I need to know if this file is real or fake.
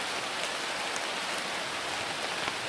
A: real